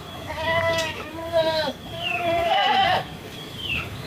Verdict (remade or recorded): remade